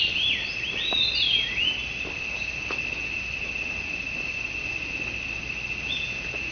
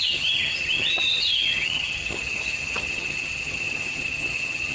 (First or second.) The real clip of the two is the first